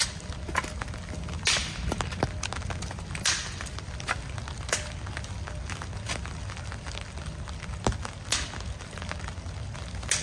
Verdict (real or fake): real